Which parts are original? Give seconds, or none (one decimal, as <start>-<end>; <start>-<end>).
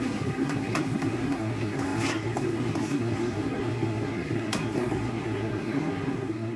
none